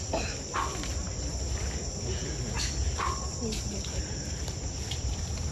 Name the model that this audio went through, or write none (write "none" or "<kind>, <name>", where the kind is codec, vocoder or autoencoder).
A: none